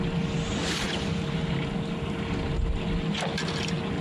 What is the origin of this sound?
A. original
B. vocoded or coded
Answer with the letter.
A